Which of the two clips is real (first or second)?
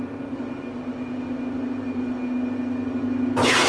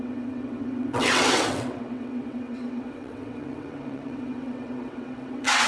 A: first